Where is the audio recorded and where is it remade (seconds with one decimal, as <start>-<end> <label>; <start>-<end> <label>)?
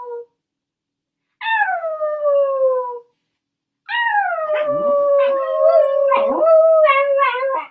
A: 0.0-1.5 recorded; 1.5-2.2 remade; 2.2-7.7 recorded